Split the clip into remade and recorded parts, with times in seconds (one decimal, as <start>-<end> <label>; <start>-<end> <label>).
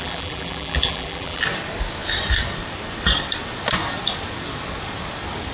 0.0-1.4 remade; 1.4-5.5 recorded